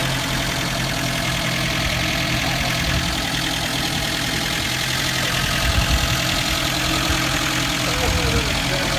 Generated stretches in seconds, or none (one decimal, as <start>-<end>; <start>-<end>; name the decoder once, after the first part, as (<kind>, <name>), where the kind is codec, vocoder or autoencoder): none